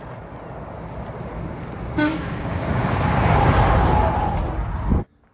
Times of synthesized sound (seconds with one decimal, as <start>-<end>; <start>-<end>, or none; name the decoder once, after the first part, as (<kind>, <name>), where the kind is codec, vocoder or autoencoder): 2.1-2.6 (codec, DAC)